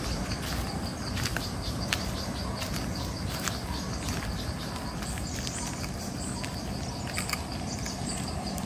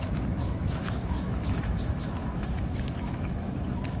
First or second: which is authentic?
first